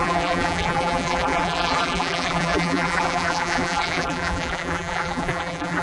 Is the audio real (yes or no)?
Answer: no